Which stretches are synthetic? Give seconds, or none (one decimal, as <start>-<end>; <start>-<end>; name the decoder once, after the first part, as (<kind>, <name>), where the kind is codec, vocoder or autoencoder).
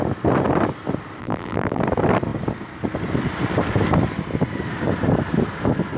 1.2-1.8 (vocoder, BigVGAN v2)